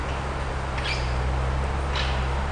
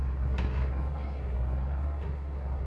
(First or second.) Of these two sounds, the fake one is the second